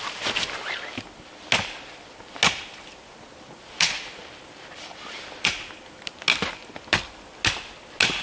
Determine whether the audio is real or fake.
real